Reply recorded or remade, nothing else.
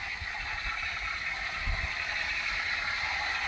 recorded